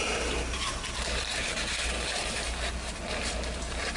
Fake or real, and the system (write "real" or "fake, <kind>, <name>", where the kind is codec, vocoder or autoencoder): real